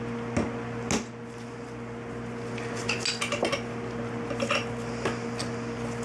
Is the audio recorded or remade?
recorded